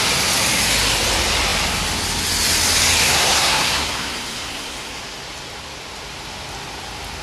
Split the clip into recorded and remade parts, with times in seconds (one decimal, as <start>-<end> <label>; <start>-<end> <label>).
0.0-3.0 recorded; 3.0-5.0 remade; 5.0-7.2 recorded

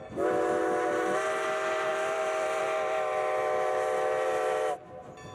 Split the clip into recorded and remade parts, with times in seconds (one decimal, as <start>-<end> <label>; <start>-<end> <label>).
0.0-1.9 recorded; 1.9-2.6 remade; 2.6-5.3 recorded

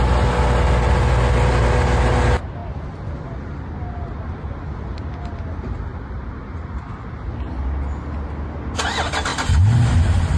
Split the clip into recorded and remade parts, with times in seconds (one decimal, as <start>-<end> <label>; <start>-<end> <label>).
0.0-2.6 recorded; 2.6-3.1 remade; 3.1-5.9 recorded; 5.9-6.8 remade; 6.8-10.4 recorded

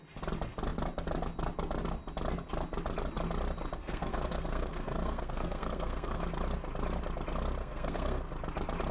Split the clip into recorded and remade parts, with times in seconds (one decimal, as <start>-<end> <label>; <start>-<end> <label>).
0.0-3.8 recorded; 3.8-6.2 remade; 6.2-7.6 recorded; 7.6-8.2 remade; 8.2-8.9 recorded

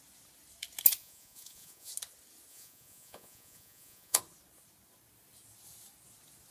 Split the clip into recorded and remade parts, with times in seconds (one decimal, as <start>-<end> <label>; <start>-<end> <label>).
0.0-1.0 recorded; 1.0-1.9 remade; 1.9-2.5 recorded; 2.5-4.2 remade; 4.2-6.5 recorded